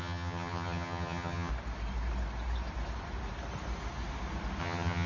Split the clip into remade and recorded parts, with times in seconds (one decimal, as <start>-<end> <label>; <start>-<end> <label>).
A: 0.0-1.5 remade; 1.5-4.6 recorded; 4.6-5.1 remade